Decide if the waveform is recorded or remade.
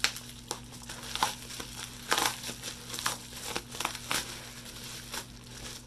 recorded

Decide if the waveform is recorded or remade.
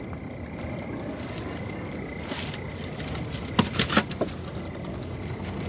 recorded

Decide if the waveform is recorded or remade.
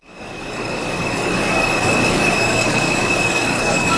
remade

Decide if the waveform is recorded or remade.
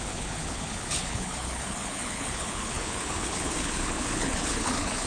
remade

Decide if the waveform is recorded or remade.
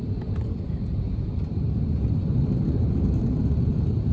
remade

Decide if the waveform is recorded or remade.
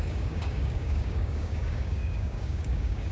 remade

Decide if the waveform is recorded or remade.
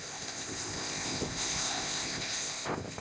remade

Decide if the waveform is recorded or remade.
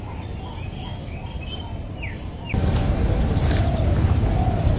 recorded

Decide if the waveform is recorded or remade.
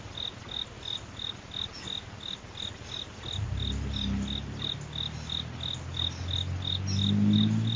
recorded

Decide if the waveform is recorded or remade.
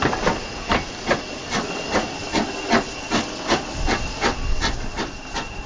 recorded